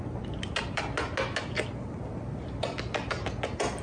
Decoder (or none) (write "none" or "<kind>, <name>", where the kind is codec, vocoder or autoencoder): none